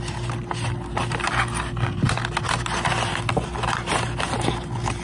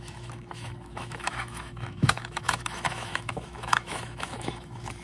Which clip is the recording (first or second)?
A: first